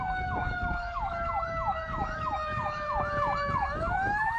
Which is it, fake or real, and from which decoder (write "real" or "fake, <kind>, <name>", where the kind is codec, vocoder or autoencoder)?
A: fake, codec, DAC